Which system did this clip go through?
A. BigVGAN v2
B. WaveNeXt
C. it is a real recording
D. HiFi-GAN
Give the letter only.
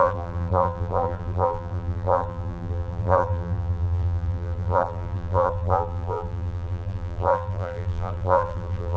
A